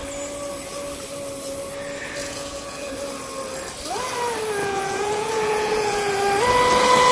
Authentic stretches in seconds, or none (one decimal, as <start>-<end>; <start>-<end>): 0.0-2.2; 2.9-4.6; 6.1-7.1